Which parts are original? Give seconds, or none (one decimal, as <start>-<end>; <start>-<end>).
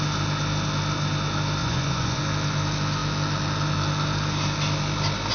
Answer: 0.0-1.6; 2.2-5.3